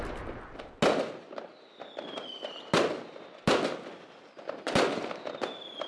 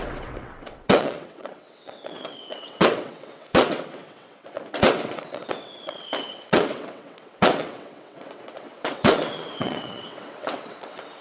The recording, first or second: first